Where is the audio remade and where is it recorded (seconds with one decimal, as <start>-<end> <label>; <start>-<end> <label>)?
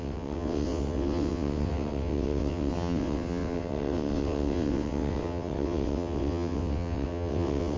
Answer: 0.0-7.8 remade